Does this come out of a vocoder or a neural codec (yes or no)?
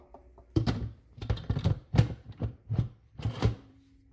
yes